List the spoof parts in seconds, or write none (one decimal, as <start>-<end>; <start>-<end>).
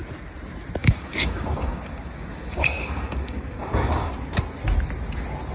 0.8-4.1